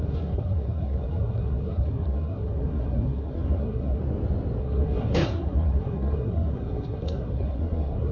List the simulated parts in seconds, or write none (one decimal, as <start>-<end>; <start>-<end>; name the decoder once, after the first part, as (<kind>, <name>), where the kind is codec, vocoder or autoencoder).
0.0-4.0 (codec, SNAC); 4.6-8.1